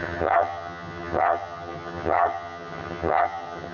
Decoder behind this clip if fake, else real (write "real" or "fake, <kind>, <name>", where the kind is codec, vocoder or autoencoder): fake, vocoder, HiFi-GAN